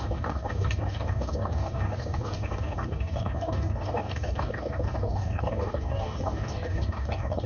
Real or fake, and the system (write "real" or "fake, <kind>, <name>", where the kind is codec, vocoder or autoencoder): fake, codec, DAC